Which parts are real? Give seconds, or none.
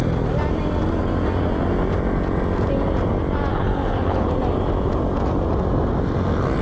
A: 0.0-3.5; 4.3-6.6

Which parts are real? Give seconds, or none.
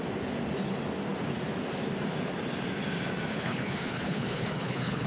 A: 0.0-3.3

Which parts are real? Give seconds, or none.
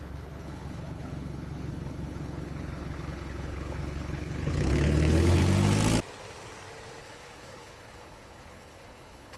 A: 5.4-7.0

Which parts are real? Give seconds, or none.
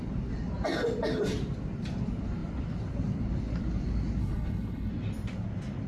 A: 0.0-4.2; 4.9-5.9